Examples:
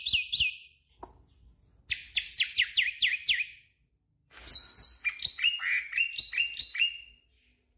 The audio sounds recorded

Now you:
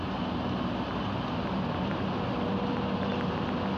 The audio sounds recorded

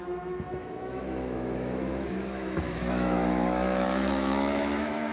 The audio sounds remade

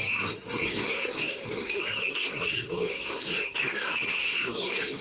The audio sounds remade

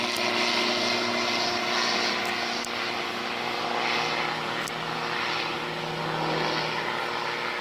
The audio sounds recorded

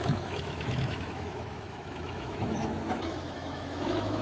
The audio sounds remade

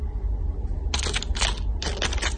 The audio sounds recorded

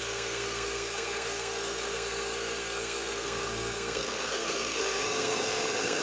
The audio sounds remade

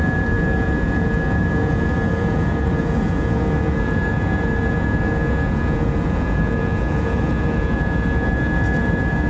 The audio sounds remade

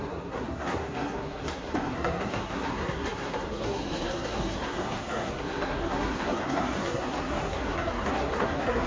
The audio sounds remade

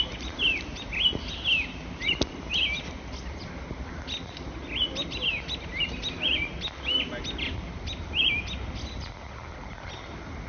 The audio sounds recorded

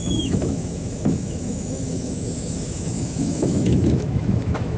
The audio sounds remade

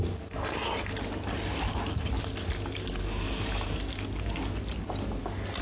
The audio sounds recorded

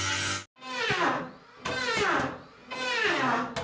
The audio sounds recorded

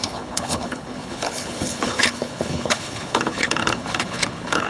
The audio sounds remade